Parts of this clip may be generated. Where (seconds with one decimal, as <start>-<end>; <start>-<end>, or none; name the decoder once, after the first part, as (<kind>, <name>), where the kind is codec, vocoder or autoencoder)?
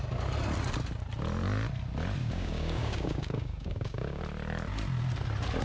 2.2-4.2 (codec, DAC)